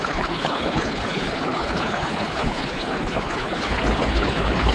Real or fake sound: fake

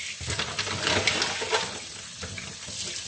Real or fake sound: real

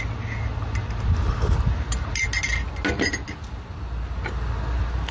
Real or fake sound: real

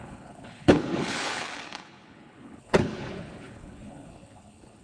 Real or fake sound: fake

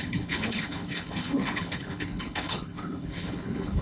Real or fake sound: fake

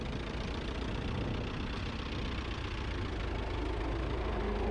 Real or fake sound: real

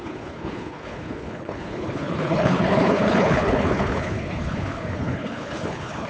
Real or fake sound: fake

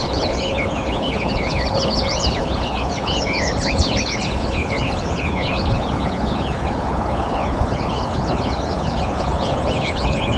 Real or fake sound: fake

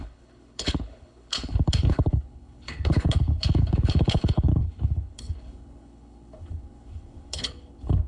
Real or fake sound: fake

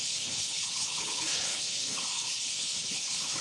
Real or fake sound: fake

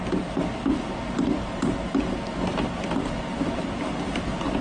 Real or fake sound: real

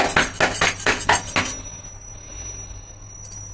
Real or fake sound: real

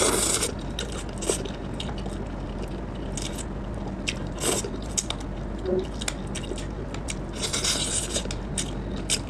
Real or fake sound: real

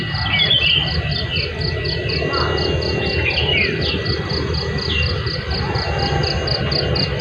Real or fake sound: real